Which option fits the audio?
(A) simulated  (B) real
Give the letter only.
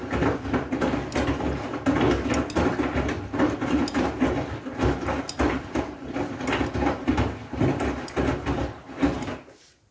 B